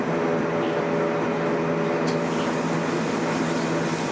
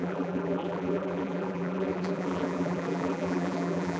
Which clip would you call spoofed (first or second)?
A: second